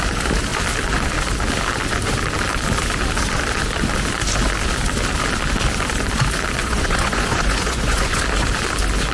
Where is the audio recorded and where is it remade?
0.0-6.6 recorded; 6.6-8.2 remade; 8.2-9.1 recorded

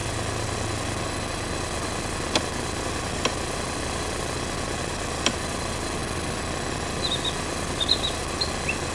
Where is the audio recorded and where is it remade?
0.0-8.9 recorded

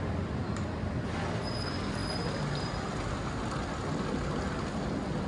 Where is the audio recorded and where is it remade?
0.0-5.3 recorded

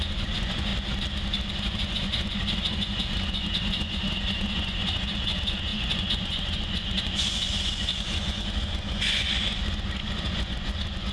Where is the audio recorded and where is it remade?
0.0-0.7 remade; 0.7-1.5 recorded; 1.5-11.1 remade

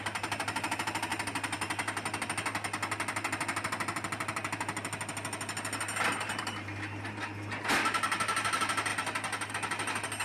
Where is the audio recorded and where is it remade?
0.0-10.2 recorded

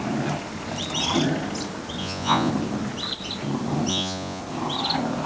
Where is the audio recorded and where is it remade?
0.0-2.0 recorded; 2.0-2.5 remade; 2.5-3.9 recorded; 3.9-4.4 remade; 4.4-5.3 recorded